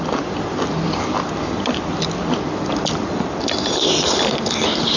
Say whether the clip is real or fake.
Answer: real